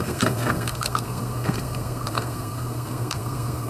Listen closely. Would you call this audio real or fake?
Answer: fake